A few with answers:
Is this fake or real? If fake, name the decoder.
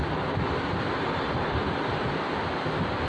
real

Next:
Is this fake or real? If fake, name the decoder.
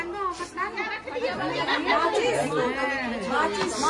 real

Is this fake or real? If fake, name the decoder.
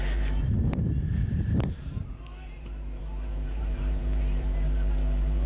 fake, vocoder, BigVGAN v2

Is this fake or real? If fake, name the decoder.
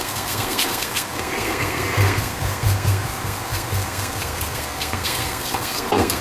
fake, codec, SNAC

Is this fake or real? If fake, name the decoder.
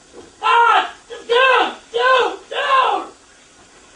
real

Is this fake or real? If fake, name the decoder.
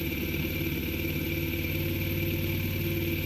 real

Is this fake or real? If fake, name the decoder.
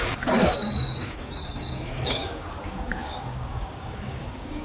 fake, codec, DAC